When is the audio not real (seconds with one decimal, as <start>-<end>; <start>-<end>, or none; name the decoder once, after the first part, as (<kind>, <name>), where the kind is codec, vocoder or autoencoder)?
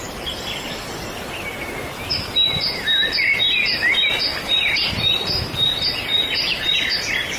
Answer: none